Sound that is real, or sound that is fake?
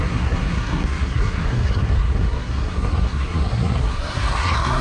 fake